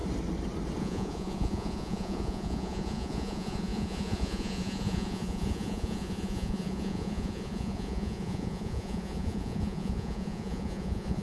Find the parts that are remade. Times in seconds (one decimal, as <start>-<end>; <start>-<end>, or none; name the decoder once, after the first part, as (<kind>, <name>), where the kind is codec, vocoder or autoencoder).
0.8-11.2 (vocoder, Vocos)